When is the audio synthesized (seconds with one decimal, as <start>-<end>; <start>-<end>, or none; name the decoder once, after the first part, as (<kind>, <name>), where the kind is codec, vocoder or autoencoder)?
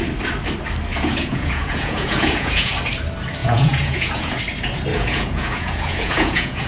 0.9-2.7 (vocoder, Vocos); 3.4-4.4; 4.9-6.7